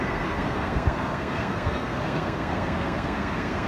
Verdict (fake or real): fake